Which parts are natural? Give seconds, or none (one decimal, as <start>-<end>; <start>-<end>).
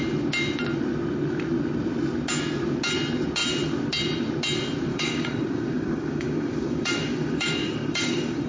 0.0-4.9